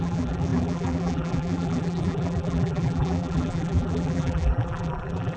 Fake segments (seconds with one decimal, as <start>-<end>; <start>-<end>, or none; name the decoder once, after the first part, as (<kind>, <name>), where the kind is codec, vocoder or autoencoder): 0.0-5.4 (vocoder, BigVGAN v2)